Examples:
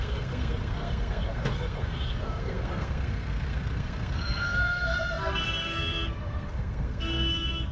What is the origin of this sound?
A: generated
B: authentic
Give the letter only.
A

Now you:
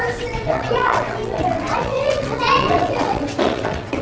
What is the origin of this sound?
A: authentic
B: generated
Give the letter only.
B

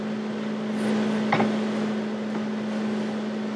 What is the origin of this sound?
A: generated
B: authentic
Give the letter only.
B